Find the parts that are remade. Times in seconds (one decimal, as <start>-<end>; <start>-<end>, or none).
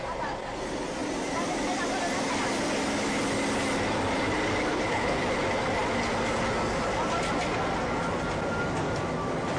4.7-5.2